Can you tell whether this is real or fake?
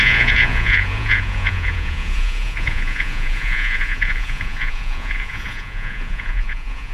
fake